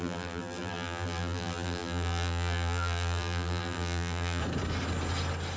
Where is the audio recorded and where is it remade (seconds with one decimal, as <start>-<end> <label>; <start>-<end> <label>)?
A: 0.0-4.4 remade; 4.4-5.6 recorded